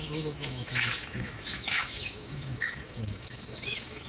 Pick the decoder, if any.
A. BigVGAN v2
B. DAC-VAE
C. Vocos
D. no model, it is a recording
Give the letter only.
B